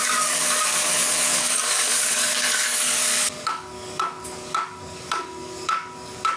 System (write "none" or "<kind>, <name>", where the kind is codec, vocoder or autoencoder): codec, DAC